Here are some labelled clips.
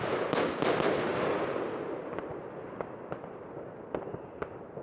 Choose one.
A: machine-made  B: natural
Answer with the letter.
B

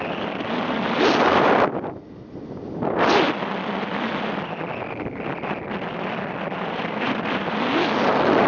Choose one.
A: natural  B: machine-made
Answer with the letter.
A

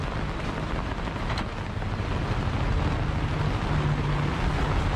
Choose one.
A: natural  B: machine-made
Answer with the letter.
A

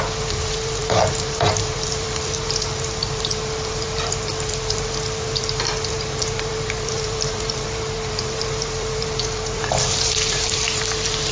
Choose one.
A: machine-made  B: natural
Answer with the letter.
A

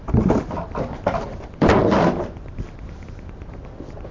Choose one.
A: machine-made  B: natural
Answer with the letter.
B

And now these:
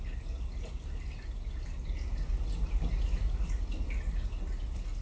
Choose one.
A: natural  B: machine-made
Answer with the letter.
A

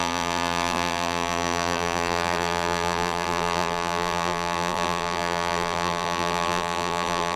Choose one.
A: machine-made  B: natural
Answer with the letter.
A